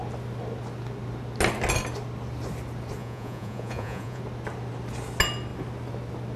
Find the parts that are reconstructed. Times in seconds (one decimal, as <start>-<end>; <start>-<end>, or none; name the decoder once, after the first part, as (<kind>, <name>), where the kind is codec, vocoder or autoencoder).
3.0-4.2 (vocoder, Vocos)